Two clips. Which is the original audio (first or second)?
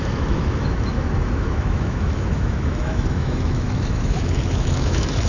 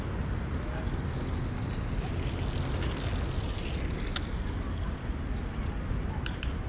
second